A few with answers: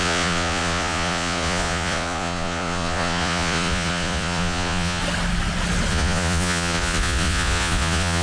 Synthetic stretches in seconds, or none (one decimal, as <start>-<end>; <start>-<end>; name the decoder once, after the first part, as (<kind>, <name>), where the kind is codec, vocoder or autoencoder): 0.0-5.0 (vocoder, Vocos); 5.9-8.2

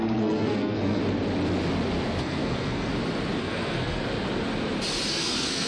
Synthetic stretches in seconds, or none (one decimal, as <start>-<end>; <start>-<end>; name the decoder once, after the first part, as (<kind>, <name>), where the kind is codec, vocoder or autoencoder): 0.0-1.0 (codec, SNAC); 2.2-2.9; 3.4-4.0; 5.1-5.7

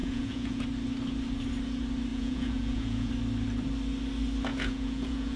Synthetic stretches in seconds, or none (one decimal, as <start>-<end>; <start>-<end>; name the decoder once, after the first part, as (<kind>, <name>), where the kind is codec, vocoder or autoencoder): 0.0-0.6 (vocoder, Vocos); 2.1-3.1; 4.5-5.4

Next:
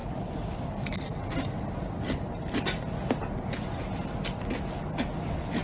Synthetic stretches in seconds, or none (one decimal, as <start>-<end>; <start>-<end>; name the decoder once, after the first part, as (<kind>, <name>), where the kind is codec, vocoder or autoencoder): none

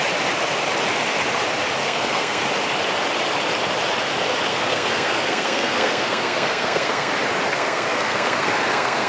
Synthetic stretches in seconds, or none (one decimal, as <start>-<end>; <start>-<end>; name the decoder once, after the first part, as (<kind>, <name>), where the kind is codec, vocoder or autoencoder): 1.8-2.4 (codec, SNAC); 4.5-7.1; 7.5-9.1

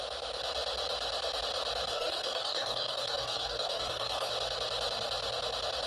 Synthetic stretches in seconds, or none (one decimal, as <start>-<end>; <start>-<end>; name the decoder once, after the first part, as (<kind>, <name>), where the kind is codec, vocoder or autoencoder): 1.9-4.3 (codec, DAC)

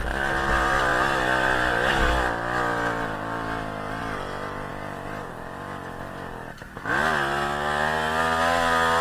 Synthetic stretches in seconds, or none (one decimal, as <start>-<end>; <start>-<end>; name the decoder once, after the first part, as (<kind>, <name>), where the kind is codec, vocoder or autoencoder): none

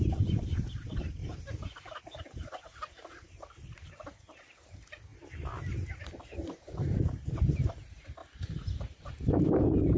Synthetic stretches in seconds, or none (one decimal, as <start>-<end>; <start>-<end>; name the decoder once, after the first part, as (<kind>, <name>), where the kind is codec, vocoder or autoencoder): 0.0-1.2 (vocoder, BigVGAN v2); 2.0-5.1; 6.2-10.0